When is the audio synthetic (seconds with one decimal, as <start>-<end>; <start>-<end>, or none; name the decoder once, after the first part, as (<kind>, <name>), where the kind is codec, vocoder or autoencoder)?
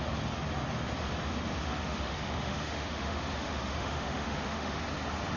1.6-4.8 (autoencoder, DAC-VAE)